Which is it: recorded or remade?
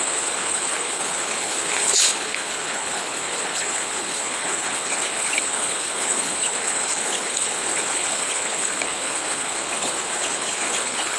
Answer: remade